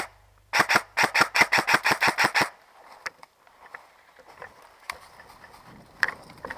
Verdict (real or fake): real